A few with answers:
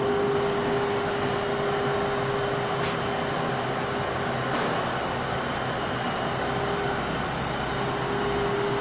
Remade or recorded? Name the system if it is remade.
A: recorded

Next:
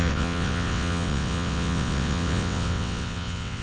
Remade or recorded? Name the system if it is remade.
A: remade, vocoder, WaveNeXt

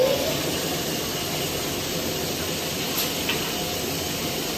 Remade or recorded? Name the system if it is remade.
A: recorded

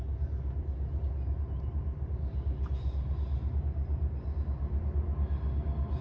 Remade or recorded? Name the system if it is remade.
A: recorded